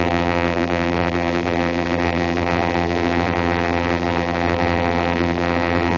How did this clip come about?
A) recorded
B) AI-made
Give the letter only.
B